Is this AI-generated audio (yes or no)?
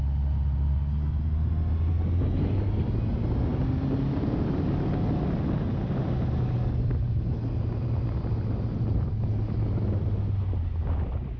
no